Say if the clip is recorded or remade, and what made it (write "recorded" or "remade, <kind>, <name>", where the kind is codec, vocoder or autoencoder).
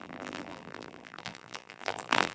remade, vocoder, BigVGAN v2